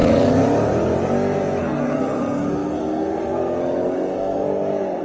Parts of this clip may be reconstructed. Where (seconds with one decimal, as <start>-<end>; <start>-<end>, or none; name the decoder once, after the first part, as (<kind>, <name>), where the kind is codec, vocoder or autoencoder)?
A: 1.6-5.0 (codec, SNAC)